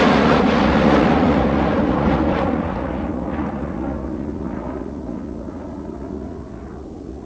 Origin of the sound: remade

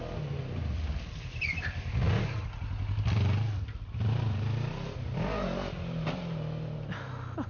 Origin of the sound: recorded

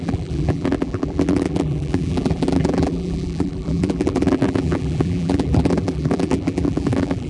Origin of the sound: remade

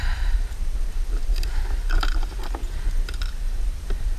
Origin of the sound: remade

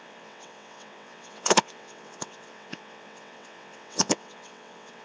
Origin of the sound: remade